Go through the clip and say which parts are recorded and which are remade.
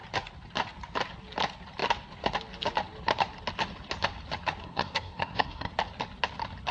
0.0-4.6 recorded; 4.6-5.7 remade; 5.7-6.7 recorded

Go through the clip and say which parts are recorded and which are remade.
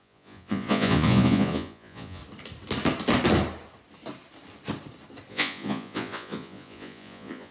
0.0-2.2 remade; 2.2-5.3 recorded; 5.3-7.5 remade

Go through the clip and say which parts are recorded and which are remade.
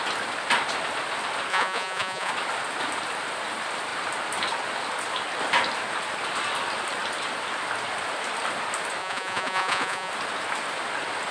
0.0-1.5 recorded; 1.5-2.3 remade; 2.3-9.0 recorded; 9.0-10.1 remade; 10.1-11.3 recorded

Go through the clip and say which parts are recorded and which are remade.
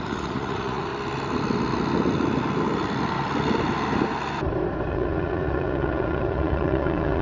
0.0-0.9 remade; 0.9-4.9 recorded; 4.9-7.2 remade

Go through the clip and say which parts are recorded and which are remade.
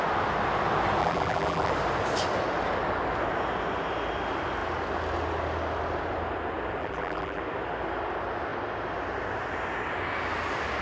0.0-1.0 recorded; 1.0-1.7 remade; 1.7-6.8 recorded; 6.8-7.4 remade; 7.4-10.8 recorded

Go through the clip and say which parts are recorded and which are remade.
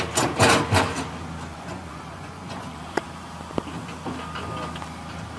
0.0-1.5 recorded; 1.5-3.0 remade; 3.0-5.4 recorded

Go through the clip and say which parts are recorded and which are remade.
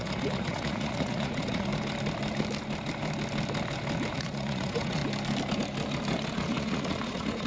0.0-1.7 remade; 1.7-4.1 recorded; 4.1-5.0 remade; 5.0-6.3 recorded; 6.3-7.5 remade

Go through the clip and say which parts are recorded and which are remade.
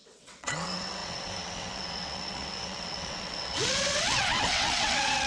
0.0-5.3 remade